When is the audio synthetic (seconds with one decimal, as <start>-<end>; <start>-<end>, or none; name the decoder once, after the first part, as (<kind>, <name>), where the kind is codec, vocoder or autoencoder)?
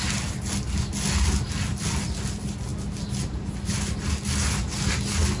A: none